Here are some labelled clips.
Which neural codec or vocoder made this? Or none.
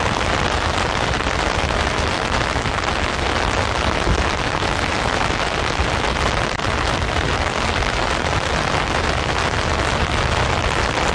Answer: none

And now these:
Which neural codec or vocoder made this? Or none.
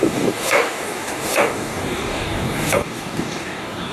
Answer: codec, DAC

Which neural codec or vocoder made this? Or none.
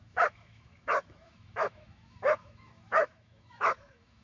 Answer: autoencoder, DAC-VAE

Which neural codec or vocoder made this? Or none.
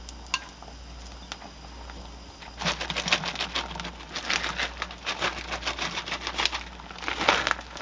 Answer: none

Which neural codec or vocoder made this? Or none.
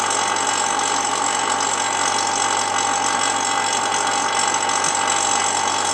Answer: none